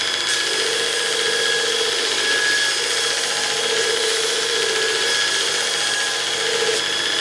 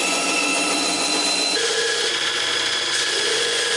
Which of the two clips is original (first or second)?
first